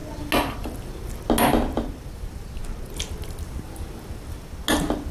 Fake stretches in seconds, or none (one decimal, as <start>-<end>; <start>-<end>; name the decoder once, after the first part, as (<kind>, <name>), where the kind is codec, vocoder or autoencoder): none